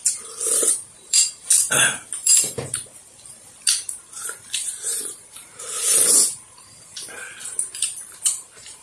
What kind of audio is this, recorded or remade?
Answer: remade